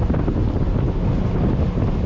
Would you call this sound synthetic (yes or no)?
no